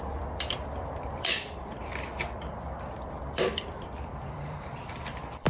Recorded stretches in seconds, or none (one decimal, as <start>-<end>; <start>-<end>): 1.8-2.9